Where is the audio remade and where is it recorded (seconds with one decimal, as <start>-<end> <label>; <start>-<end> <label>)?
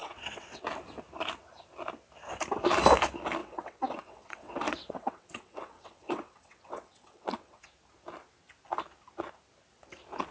0.0-0.6 remade; 0.6-3.4 recorded; 3.4-7.6 remade; 7.6-10.3 recorded